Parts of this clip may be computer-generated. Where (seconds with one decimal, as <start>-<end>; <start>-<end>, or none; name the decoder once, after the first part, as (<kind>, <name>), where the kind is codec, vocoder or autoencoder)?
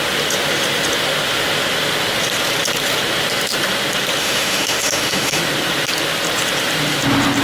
4.2-5.4 (autoencoder, DAC-VAE)